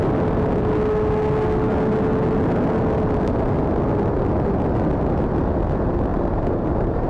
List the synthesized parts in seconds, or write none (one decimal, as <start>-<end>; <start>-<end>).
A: 6.1-7.1